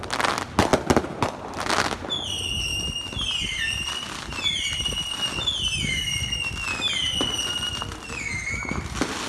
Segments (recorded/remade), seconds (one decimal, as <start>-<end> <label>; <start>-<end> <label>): 0.0-9.3 recorded